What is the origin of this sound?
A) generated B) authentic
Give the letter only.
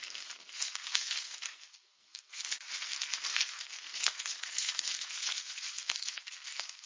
A